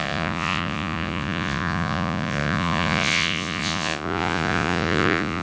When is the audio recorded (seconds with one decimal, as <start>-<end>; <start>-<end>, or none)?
none